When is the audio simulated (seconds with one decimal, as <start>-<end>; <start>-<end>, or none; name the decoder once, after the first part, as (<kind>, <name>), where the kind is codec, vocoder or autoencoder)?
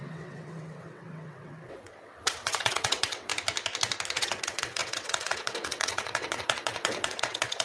0.0-3.3 (vocoder, WaveNeXt); 4.2-7.6